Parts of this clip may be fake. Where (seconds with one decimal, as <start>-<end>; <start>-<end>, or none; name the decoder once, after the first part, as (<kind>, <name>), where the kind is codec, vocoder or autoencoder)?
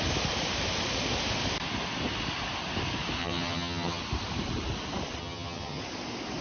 3.2-4.0 (vocoder, HiFi-GAN); 5.2-5.8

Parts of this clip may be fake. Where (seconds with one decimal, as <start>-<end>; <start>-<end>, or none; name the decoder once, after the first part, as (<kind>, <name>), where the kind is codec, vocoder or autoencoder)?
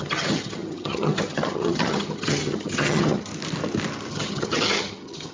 0.0-3.3 (vocoder, HiFi-GAN); 4.1-5.3